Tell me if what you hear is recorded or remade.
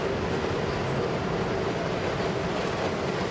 recorded